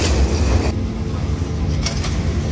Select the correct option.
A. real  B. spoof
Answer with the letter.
A